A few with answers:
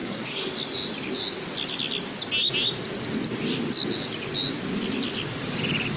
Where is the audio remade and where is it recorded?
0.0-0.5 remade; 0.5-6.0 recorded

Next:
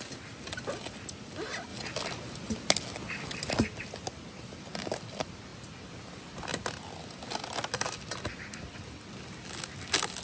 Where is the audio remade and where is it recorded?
0.0-10.2 recorded

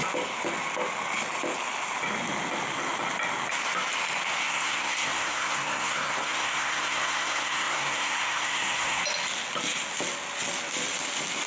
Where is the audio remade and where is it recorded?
0.0-4.4 recorded; 4.4-9.0 remade; 9.0-11.5 recorded

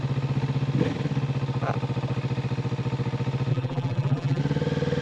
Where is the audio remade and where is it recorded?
0.0-3.5 recorded; 3.5-4.4 remade; 4.4-5.0 recorded

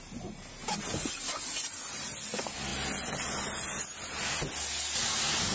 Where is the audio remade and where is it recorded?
0.0-5.5 recorded

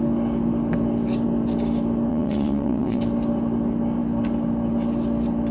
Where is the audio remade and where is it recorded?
0.0-2.1 recorded; 2.1-3.0 remade; 3.0-5.5 recorded

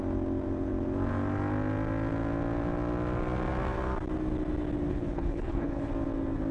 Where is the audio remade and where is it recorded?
0.0-4.9 recorded; 4.9-5.9 remade; 5.9-6.5 recorded